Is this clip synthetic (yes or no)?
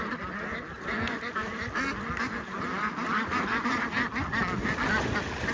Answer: no